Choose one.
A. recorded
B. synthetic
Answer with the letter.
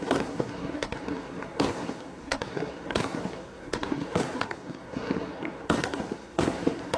B